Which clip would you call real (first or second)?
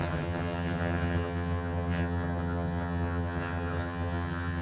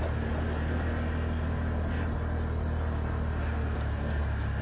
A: second